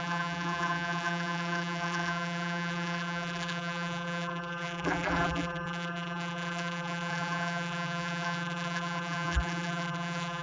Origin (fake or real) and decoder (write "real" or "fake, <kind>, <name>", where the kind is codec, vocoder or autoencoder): fake, vocoder, BigVGAN v2